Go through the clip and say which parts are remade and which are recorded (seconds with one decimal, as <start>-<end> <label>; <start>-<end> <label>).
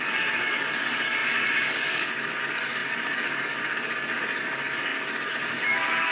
0.0-6.1 remade